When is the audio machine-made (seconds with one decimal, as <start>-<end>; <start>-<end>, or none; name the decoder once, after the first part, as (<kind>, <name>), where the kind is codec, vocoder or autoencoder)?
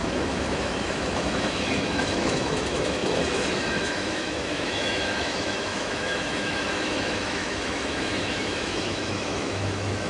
0.0-10.1 (autoencoder, DAC-VAE)